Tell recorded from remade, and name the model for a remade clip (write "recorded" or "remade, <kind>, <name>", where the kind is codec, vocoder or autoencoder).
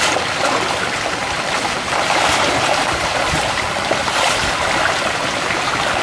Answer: recorded